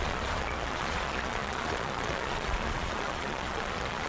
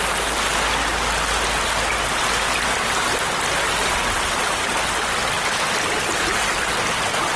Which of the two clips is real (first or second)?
second